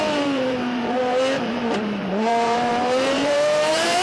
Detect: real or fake fake